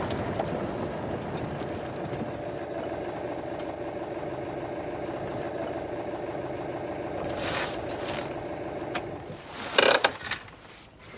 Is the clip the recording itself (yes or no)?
no